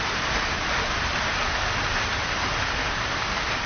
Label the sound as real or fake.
fake